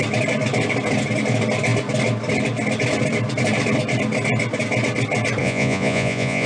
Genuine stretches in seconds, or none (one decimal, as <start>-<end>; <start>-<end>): 0.0-5.4